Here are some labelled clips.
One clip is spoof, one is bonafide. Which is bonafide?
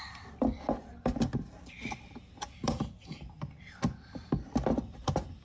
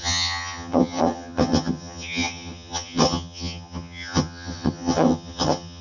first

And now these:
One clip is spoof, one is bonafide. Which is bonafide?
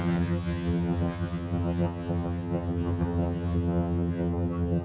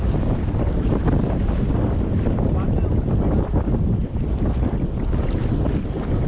second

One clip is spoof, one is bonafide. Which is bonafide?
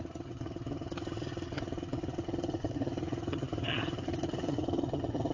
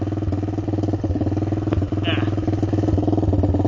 second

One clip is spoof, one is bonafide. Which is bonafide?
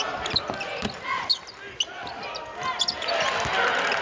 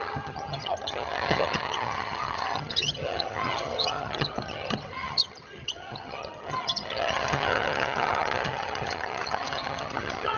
first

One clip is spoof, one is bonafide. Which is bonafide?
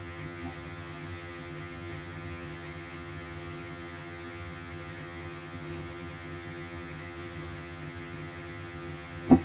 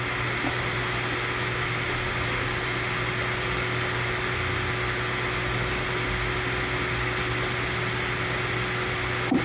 second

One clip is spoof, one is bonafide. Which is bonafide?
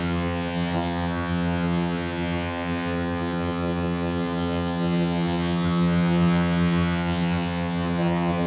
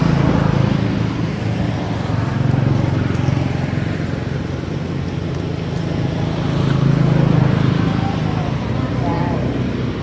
second